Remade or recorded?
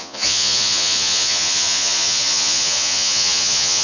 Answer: remade